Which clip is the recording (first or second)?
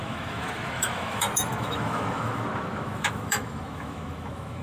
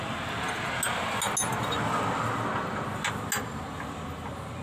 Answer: second